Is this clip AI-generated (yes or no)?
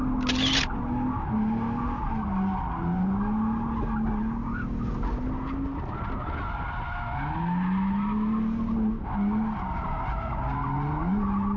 no